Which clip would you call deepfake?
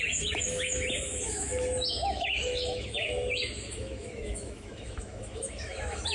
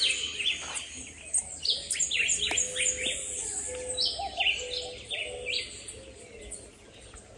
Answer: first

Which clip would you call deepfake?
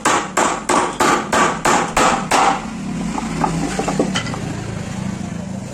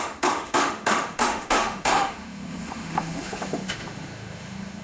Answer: second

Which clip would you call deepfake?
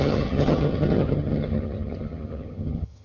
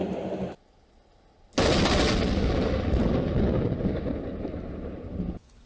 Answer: first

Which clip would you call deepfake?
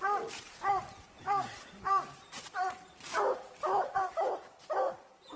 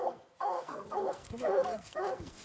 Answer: second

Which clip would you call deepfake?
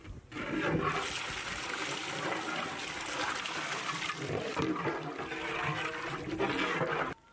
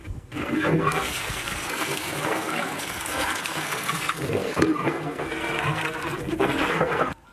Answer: second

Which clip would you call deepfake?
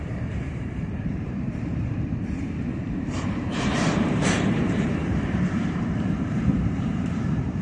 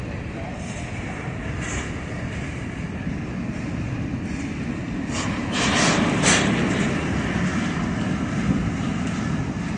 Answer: first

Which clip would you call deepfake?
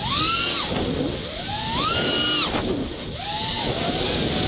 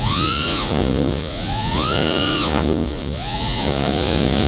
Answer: second